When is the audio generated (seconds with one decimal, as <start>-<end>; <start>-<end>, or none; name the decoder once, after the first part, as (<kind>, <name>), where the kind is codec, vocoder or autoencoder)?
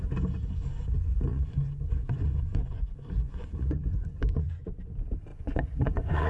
1.3-4.8 (vocoder, Vocos); 5.3-6.3